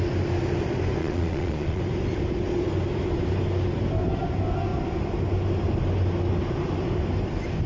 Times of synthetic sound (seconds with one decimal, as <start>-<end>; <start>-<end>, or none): 1.0-1.8